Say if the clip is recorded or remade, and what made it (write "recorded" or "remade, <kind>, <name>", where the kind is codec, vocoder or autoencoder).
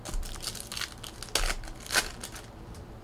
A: recorded